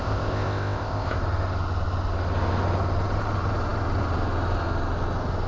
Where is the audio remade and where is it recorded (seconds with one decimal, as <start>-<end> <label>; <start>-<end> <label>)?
0.0-1.2 remade; 1.2-5.5 recorded